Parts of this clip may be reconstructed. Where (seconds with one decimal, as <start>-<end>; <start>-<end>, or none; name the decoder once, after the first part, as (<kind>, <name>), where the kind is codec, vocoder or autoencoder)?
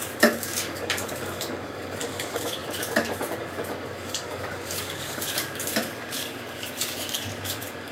0.0-7.9 (codec, DAC)